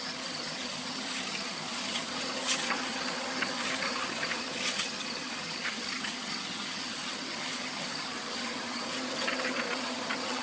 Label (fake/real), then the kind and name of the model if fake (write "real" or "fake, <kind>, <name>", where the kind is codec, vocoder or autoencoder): fake, vocoder, HiFi-GAN